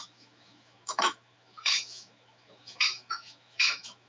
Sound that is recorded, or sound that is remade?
remade